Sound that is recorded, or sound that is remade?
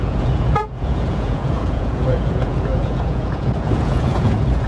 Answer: remade